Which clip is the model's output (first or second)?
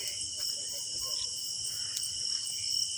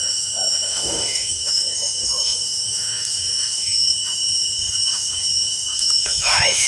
second